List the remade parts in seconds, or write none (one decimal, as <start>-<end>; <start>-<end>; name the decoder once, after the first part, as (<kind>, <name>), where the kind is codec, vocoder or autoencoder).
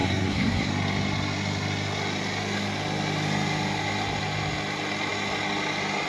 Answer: 0.0-0.7 (codec, SNAC)